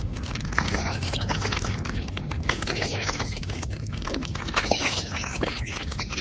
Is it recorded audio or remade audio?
remade